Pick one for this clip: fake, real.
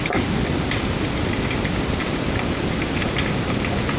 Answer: real